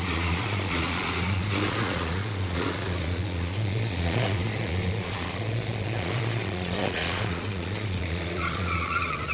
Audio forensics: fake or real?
fake